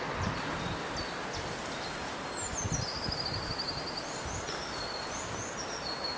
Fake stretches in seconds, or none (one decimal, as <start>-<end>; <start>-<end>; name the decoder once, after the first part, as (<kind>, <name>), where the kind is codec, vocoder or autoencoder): none